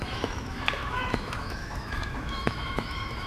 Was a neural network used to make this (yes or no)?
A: yes